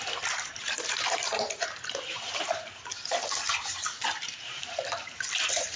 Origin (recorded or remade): recorded